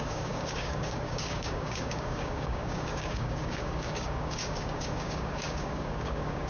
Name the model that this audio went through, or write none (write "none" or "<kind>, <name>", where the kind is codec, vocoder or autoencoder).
codec, DAC